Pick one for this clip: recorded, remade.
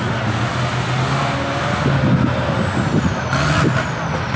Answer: recorded